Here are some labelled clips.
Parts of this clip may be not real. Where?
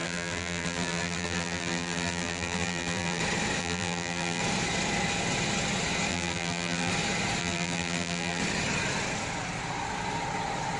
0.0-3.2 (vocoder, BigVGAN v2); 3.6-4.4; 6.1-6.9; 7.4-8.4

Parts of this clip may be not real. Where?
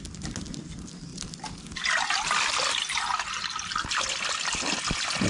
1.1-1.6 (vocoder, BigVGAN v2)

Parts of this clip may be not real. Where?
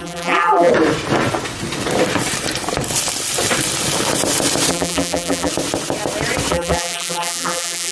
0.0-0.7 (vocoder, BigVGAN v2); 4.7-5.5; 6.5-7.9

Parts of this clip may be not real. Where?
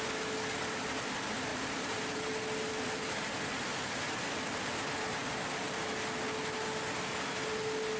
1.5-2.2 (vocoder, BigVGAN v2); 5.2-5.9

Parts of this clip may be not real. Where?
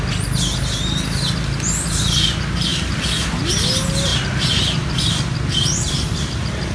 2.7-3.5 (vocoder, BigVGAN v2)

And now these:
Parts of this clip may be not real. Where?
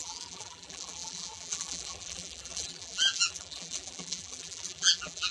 0.0-5.3 (vocoder, BigVGAN v2)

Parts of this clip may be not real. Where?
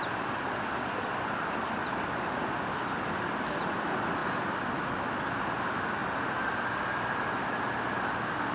0.0-1.8 (vocoder, BigVGAN v2); 2.4-4.2; 5.2-6.0; 8.1-8.5